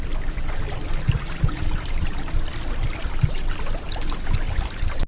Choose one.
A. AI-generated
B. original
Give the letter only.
B